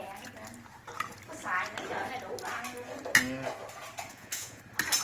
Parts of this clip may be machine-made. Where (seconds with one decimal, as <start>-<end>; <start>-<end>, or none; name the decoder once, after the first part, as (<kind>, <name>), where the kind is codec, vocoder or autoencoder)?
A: 4.1-4.6 (vocoder, Vocos)